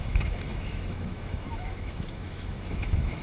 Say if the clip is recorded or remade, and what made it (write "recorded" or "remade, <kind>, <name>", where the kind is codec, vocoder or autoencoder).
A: remade, autoencoder, DAC-VAE